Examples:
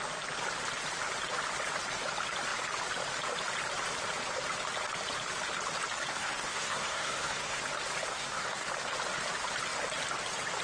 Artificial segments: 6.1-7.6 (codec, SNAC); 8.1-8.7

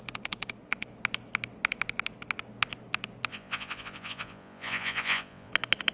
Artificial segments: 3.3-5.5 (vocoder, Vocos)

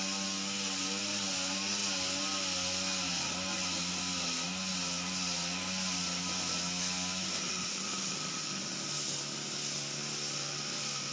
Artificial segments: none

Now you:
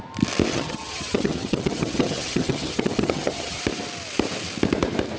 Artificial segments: 0.5-3.6 (vocoder, HiFi-GAN)

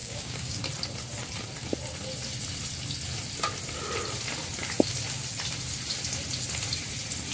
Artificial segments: 0.0-0.6 (codec, DAC)